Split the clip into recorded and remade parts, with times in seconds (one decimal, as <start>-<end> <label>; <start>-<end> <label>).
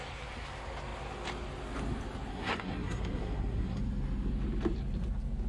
0.0-2.3 recorded; 2.3-3.8 remade; 3.8-5.5 recorded